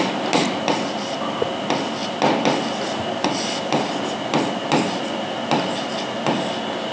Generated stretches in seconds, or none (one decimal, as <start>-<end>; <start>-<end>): none

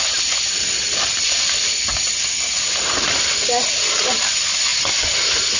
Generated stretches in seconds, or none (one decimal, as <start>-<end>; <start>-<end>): none

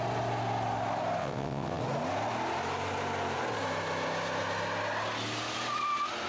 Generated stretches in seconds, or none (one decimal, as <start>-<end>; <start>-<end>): 1.2-1.8

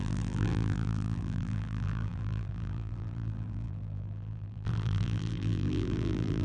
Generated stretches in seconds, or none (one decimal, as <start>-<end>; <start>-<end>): 0.0-6.4

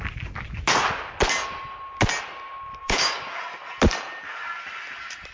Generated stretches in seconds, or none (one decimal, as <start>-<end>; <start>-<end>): 2.8-3.4

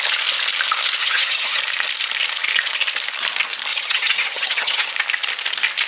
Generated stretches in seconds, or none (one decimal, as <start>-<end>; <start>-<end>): 1.0-1.6; 3.7-4.9

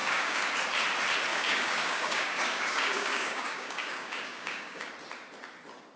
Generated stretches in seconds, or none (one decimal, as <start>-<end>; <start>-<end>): 0.0-0.5; 1.3-4.9

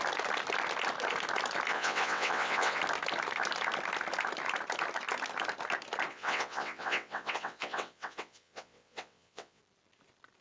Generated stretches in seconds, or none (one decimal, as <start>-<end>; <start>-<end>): 1.7-2.8; 6.1-9.6